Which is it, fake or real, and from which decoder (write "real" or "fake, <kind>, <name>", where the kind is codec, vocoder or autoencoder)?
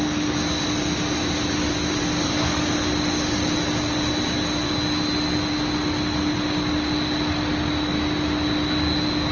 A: real